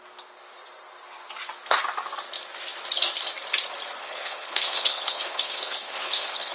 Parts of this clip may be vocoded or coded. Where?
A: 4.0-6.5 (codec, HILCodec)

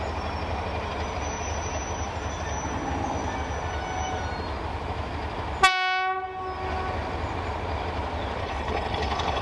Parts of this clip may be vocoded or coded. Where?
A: 8.4-9.4 (codec, HILCodec)

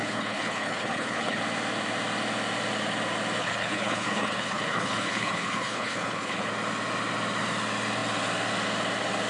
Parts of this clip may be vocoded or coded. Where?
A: 0.0-1.4 (codec, HILCodec); 3.4-6.5

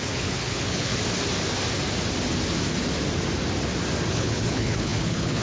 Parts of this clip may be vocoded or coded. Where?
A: 0.0-0.9 (codec, HILCodec); 4.1-5.4

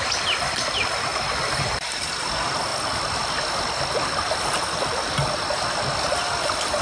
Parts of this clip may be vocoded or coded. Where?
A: none

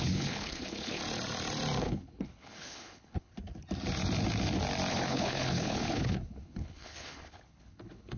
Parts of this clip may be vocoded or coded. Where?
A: 0.0-1.0 (codec, HILCodec); 1.8-3.3; 4.9-8.2

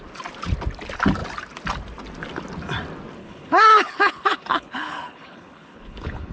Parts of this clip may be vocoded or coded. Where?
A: 3.2-6.3 (codec, HILCodec)